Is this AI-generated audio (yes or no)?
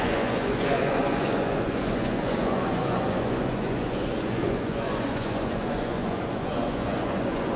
yes